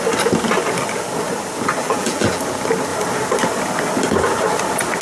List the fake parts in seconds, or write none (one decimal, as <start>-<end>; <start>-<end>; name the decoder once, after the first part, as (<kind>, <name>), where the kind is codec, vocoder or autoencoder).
1.8-2.4 (vocoder, BigVGAN v2)